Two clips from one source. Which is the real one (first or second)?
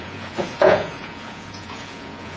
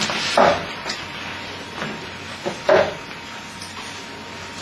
second